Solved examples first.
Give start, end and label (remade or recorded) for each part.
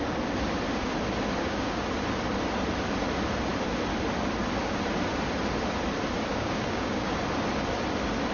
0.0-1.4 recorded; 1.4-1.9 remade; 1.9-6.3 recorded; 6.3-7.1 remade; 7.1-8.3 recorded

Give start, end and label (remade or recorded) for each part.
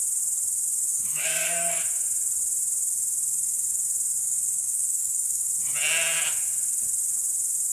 0.0-0.9 recorded; 0.9-1.8 remade; 1.8-4.2 recorded; 4.2-5.5 remade; 5.5-7.7 recorded